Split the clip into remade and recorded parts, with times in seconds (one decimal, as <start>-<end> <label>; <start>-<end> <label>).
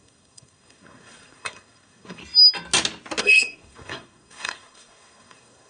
0.0-2.2 remade; 2.2-3.2 recorded; 3.2-5.7 remade